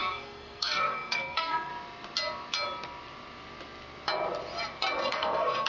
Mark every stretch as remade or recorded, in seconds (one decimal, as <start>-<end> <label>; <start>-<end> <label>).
0.0-1.7 remade; 1.7-5.1 recorded; 5.1-5.7 remade